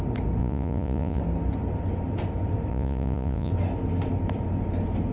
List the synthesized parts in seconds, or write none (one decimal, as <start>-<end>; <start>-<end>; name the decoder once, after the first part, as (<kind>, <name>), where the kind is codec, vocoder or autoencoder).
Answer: 0.4-1.2 (vocoder, Vocos); 2.7-3.5